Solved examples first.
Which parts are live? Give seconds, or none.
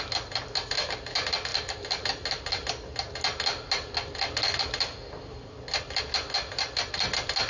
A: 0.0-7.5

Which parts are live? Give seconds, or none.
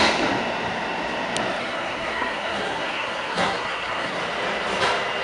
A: 0.0-1.6; 4.2-5.2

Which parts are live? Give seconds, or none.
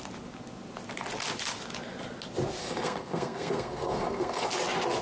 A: 0.0-2.6; 4.5-5.0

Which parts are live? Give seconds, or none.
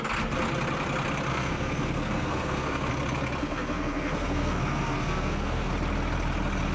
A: 0.0-1.3; 2.9-3.4; 5.7-6.7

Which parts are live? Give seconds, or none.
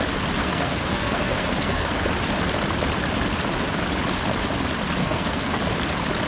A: 0.0-0.4; 2.0-5.0; 5.6-6.3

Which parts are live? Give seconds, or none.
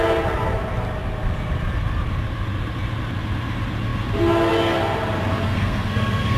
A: 0.0-5.4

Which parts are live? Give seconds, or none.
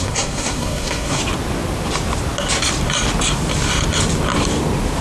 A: 1.2-5.0